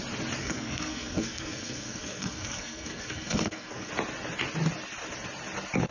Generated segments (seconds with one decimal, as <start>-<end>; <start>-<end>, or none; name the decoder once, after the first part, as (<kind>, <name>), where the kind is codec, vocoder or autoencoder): 0.4-3.9 (codec, SNAC)